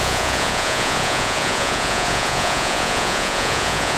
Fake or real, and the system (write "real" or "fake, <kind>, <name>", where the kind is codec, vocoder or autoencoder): fake, vocoder, Vocos